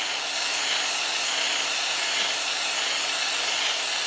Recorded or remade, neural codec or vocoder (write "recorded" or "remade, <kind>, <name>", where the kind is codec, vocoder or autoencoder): recorded